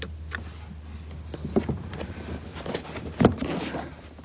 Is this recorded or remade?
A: recorded